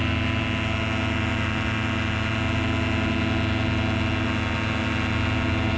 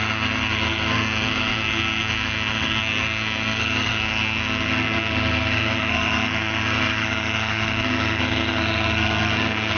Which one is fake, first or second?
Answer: second